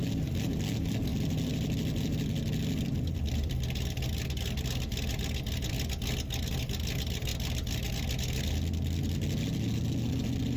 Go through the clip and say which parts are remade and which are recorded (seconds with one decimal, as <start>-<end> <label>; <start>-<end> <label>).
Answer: 0.0-1.1 recorded; 1.1-4.6 remade; 4.6-7.3 recorded; 7.3-7.9 remade; 7.9-10.6 recorded